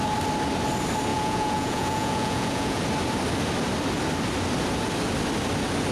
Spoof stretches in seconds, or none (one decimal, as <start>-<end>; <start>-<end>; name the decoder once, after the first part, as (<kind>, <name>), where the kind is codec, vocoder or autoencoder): 1.1-2.8 (vocoder, Vocos)